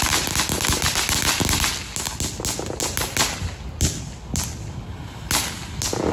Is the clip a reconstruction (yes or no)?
no